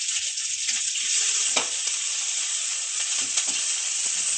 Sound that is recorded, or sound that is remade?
remade